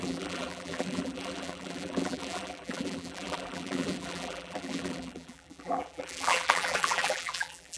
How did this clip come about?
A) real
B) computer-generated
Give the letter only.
B